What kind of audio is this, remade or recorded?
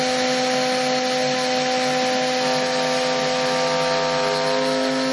recorded